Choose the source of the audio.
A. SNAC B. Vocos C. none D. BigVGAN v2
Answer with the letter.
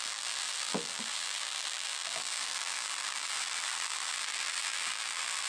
D